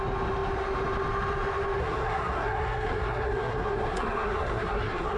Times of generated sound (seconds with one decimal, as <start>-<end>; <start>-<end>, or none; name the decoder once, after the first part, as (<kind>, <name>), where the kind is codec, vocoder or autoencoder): 1.8-5.2 (codec, SNAC)